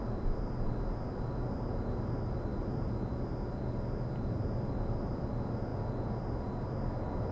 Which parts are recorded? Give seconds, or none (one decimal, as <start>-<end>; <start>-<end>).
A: 0.0-7.3